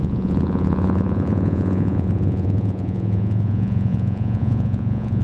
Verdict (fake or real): fake